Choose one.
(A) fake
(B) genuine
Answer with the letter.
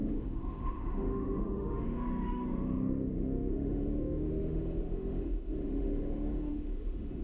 A